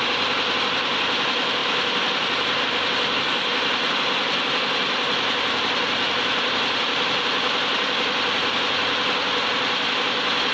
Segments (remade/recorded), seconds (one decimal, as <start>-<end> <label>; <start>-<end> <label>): 0.0-10.5 recorded